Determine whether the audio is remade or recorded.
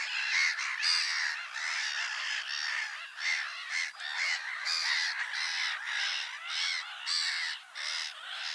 recorded